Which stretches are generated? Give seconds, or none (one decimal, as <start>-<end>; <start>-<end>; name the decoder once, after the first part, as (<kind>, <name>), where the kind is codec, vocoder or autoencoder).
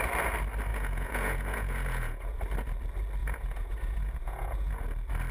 0.7-2.4 (vocoder, Vocos); 3.2-4.8